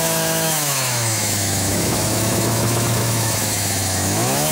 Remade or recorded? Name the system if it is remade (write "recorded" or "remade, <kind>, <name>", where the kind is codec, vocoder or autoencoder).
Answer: remade, autoencoder, DAC-VAE